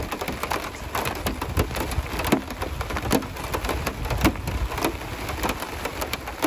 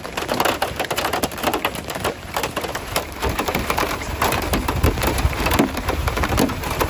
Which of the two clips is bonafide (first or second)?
first